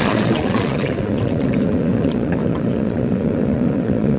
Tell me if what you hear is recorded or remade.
remade